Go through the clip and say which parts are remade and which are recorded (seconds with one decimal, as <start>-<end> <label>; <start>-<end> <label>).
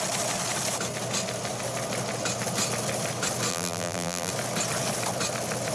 0.0-3.5 recorded; 3.5-4.3 remade; 4.3-5.7 recorded